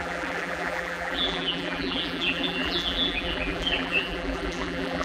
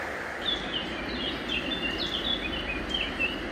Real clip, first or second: second